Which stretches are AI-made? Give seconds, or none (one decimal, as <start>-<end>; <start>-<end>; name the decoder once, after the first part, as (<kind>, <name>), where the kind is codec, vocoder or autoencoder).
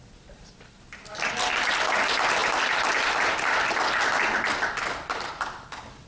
none